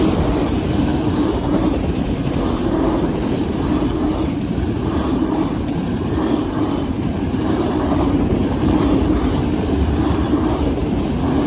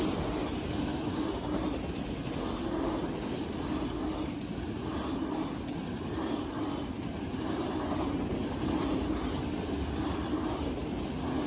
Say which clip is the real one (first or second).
second